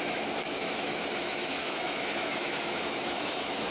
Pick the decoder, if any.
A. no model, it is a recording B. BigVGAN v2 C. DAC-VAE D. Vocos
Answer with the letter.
C